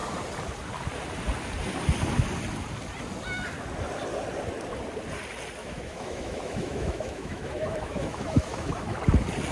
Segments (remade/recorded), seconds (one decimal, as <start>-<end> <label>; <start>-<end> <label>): 0.0-5.6 recorded; 5.6-9.0 remade; 9.0-9.5 recorded